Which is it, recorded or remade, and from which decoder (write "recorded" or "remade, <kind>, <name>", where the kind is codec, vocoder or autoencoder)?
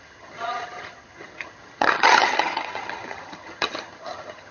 remade, vocoder, HiFi-GAN